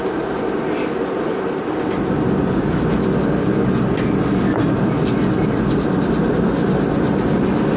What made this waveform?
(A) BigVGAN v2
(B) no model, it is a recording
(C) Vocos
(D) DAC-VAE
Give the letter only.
B